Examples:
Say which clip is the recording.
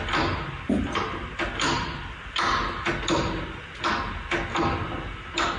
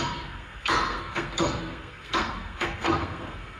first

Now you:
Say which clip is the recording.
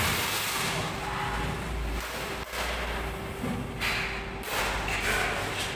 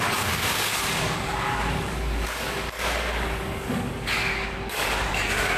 first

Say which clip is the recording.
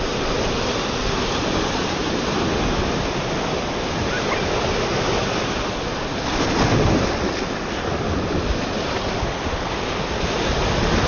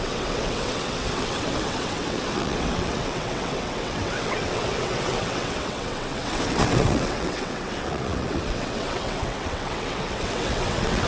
first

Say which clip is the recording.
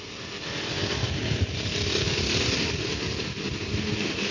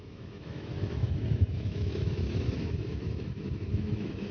first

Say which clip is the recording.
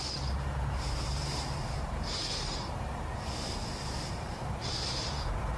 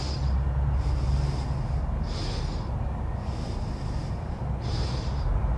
second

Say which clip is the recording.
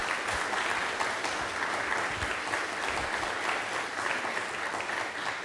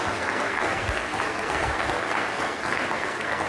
first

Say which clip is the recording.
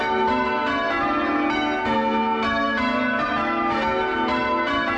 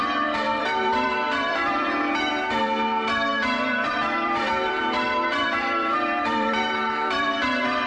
first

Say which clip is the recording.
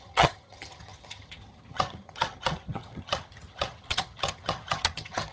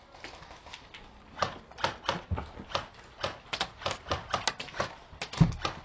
second